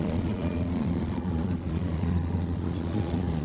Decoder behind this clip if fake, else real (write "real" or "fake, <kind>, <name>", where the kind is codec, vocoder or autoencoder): fake, vocoder, Vocos